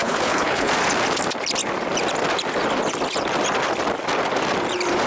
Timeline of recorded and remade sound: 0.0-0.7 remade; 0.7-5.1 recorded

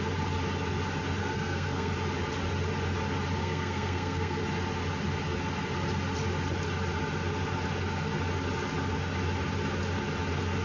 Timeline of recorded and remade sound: 0.0-1.2 recorded; 1.2-1.9 remade; 1.9-3.4 recorded; 3.4-4.4 remade; 4.4-10.6 recorded

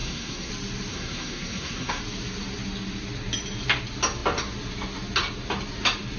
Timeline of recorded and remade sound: 0.0-0.5 remade; 0.5-0.9 recorded; 0.9-2.0 remade; 2.0-6.2 recorded

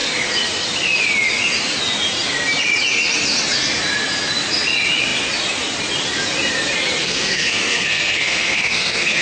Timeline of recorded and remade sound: 0.0-7.0 recorded; 7.0-9.2 remade

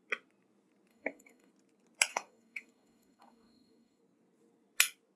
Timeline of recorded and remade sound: 0.0-0.9 recorded; 0.9-1.5 remade; 1.5-2.1 recorded; 2.1-4.0 remade; 4.0-5.2 recorded

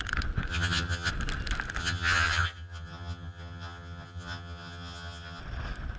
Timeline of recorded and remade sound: 0.0-0.5 recorded; 0.5-1.1 remade; 1.1-1.8 recorded; 1.8-5.4 remade; 5.4-6.0 recorded

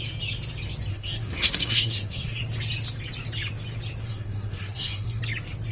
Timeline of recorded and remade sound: 0.0-0.9 recorded; 0.9-2.4 remade; 2.4-4.0 recorded; 4.0-5.2 remade; 5.2-5.7 recorded